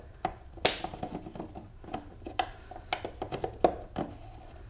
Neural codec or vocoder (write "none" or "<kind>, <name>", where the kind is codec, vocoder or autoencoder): none